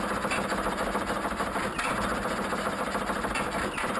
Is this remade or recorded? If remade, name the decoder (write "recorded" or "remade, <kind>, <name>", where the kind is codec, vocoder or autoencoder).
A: recorded